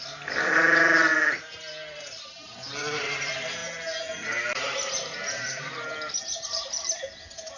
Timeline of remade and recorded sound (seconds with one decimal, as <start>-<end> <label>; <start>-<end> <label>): 0.0-7.6 remade